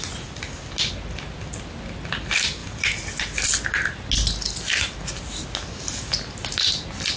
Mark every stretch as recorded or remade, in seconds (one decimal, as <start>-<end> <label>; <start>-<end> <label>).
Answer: 0.0-7.2 recorded